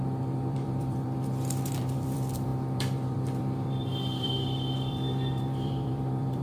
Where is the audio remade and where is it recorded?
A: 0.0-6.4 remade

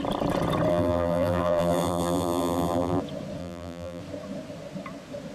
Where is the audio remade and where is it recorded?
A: 0.0-0.7 recorded; 0.7-3.0 remade; 3.0-3.4 recorded; 3.4-4.0 remade; 4.0-5.3 recorded

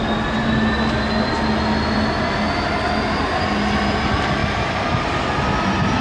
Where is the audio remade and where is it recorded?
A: 0.0-6.0 recorded

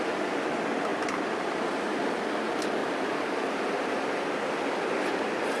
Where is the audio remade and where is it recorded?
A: 0.0-0.9 recorded; 0.9-2.2 remade; 2.2-2.8 recorded; 2.8-4.6 remade; 4.6-5.6 recorded

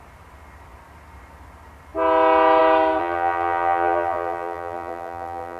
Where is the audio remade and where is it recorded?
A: 0.0-3.0 recorded; 3.0-5.6 remade

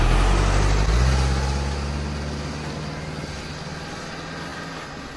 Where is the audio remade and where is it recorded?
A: 0.0-5.2 recorded

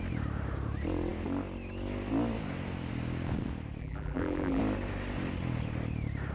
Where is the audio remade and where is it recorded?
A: 0.0-3.8 recorded; 3.8-4.6 remade; 4.6-6.3 recorded

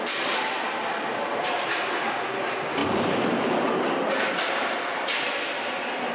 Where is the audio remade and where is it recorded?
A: 0.0-2.8 recorded; 2.8-4.1 remade; 4.1-6.1 recorded